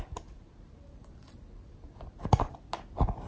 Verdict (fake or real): real